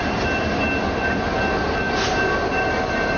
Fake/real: real